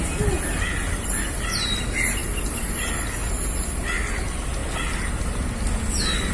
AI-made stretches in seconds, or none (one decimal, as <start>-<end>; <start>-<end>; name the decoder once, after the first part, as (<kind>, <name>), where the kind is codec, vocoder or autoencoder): none